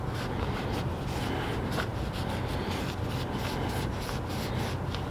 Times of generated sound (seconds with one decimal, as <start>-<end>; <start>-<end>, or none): none